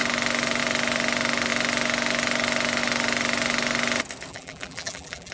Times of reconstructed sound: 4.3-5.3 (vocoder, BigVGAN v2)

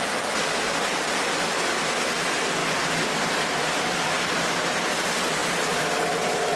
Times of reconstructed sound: none

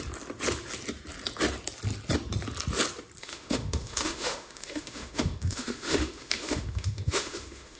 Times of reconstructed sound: 3.2-7.8 (autoencoder, DAC-VAE)

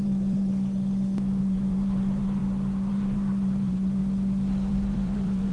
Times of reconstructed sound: 0.0-0.5 (vocoder, BigVGAN v2); 1.4-2.4; 2.9-4.0; 4.7-5.5

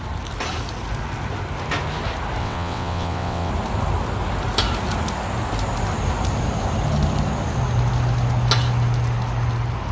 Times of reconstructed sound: 2.4-3.5 (vocoder, WaveNeXt)

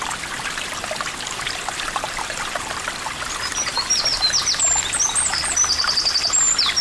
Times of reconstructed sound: 0.0-6.8 (vocoder, BigVGAN v2)

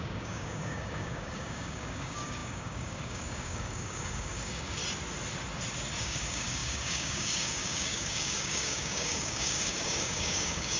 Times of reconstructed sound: 0.0-4.8 (codec, DAC); 6.0-10.8

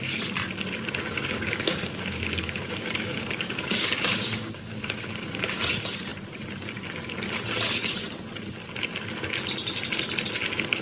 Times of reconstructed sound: 1.1-5.6 (codec, DAC)